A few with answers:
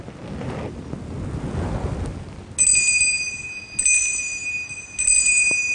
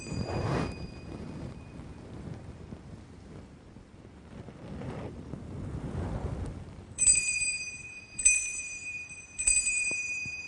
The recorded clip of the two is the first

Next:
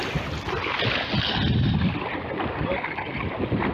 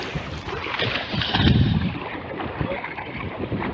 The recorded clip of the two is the first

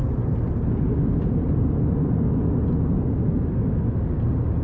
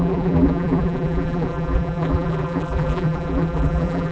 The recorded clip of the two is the first